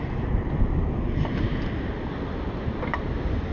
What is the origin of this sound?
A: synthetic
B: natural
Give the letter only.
B